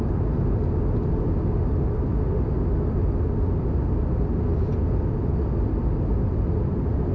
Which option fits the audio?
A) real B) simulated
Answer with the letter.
A